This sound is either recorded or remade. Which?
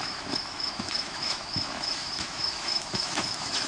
remade